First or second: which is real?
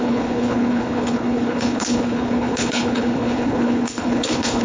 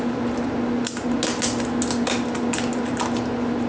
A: second